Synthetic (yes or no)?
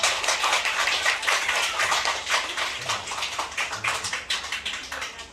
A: yes